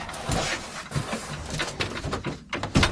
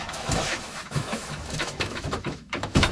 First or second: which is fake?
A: second